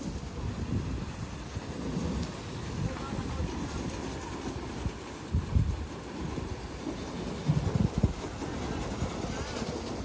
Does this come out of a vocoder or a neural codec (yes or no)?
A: no